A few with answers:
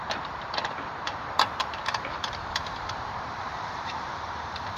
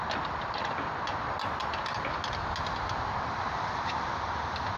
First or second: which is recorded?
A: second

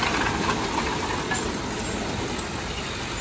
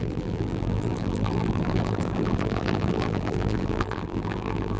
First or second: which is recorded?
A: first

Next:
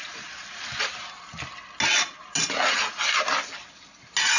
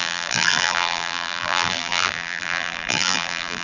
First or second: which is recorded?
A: first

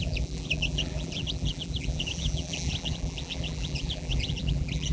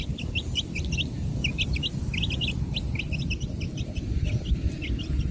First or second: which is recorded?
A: second